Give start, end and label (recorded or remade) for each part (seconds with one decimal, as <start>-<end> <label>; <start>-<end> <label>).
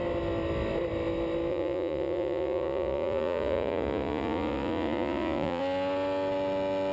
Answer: 0.0-1.5 recorded; 1.5-5.6 remade; 5.6-6.9 recorded